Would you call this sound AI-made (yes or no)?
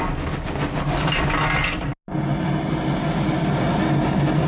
no